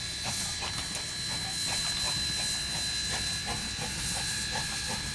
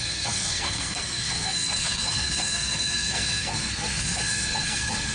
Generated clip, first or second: second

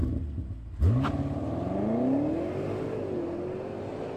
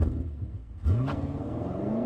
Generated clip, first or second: second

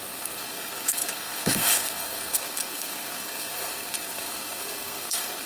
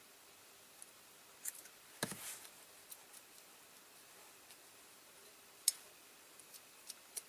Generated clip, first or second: first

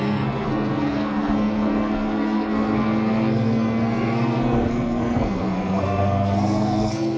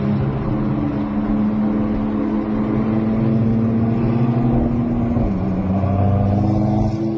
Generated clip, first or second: first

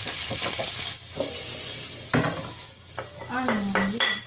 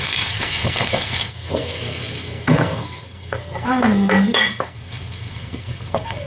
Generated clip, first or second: second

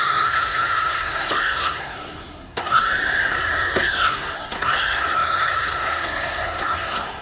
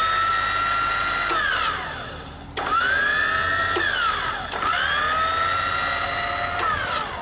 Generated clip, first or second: first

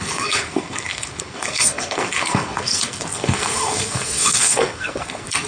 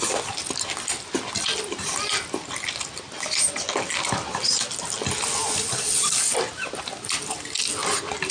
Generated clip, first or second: first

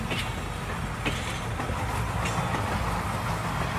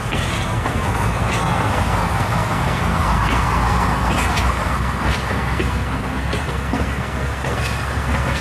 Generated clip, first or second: second